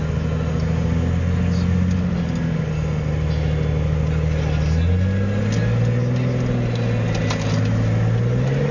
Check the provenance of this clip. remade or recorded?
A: recorded